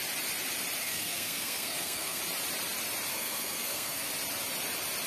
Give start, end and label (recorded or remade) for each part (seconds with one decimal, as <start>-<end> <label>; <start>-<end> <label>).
0.0-0.8 recorded; 0.8-2.2 remade; 2.2-3.1 recorded; 3.1-4.1 remade; 4.1-5.1 recorded

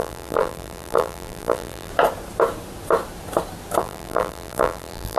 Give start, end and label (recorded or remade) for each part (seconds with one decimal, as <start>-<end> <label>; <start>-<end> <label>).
0.0-1.9 remade; 1.9-3.8 recorded; 3.8-5.2 remade

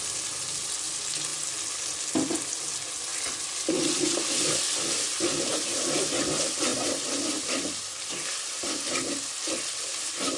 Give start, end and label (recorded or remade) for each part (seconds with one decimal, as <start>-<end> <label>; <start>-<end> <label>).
0.0-3.1 recorded; 3.1-4.1 remade; 4.1-6.7 recorded; 6.7-8.6 remade; 8.6-10.4 recorded

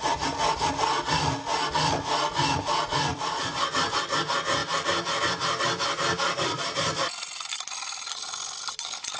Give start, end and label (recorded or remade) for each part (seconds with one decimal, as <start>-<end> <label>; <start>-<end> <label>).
0.0-3.1 recorded; 3.1-3.6 remade; 3.6-4.6 recorded; 4.6-5.2 remade; 5.2-9.2 recorded

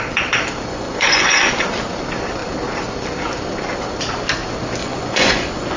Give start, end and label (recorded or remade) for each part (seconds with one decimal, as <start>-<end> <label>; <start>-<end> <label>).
0.0-0.7 recorded; 0.7-1.5 remade; 1.5-4.8 recorded; 4.8-5.8 remade

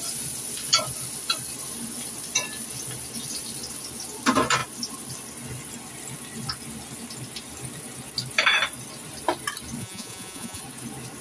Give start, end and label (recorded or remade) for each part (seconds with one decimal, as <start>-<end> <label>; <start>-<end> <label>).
0.0-9.8 recorded; 9.8-10.6 remade; 10.6-11.2 recorded

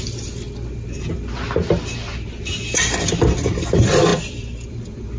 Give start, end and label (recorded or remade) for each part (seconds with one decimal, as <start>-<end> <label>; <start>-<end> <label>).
0.0-4.1 recorded; 4.1-4.7 remade; 4.7-5.2 recorded